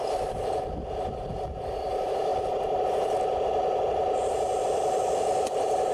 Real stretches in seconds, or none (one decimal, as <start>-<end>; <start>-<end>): 0.0-5.9